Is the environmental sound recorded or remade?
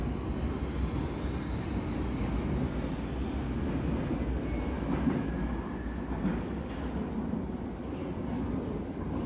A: recorded